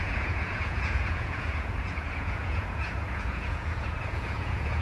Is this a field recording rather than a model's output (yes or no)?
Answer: no